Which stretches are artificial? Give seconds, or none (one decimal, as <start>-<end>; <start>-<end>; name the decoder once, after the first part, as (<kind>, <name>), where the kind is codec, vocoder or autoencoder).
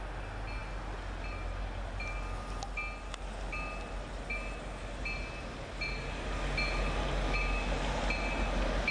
none